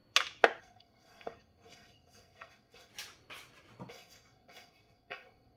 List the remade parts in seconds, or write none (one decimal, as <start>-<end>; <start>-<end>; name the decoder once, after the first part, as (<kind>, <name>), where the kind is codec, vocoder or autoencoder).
0.6-2.9 (codec, SNAC); 3.9-5.6